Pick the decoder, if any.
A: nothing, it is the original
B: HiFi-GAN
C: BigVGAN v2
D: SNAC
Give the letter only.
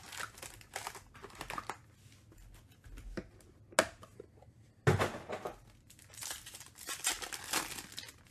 A